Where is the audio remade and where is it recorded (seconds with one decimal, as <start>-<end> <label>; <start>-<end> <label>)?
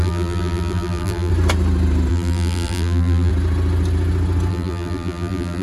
0.0-1.3 remade; 1.3-2.1 recorded; 2.1-3.3 remade; 3.3-4.5 recorded; 4.5-5.6 remade